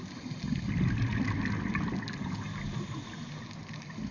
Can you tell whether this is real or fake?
real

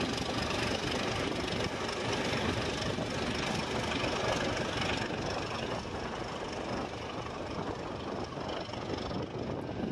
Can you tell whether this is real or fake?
real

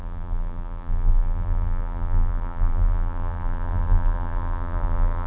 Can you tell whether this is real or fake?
fake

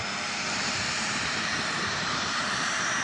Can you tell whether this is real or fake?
fake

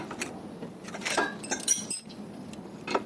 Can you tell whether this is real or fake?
fake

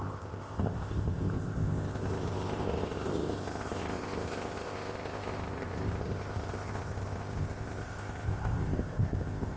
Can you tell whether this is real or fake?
fake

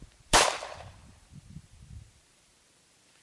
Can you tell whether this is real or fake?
fake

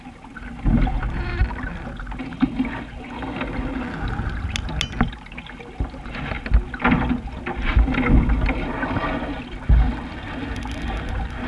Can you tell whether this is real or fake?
real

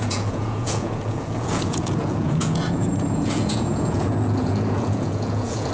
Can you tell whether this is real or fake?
fake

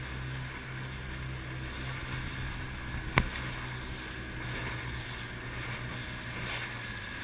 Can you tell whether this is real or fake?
real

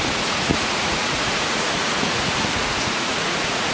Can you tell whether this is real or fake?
fake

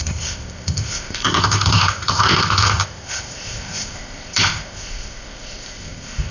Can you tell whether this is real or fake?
fake